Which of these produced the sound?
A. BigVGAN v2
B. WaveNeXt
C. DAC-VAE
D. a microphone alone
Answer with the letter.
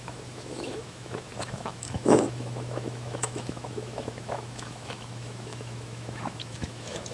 C